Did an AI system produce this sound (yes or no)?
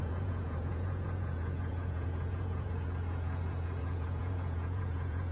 yes